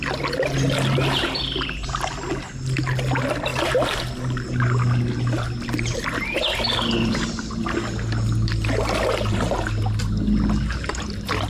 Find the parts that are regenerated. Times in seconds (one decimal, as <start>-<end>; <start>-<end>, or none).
none